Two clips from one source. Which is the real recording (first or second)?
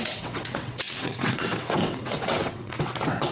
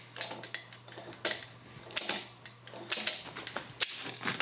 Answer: second